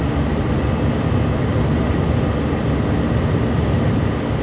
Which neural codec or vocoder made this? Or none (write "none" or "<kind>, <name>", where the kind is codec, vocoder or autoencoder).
none